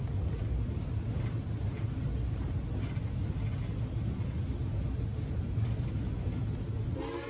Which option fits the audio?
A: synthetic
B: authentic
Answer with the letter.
B